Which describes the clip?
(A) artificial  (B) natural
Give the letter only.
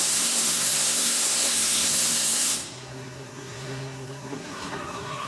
A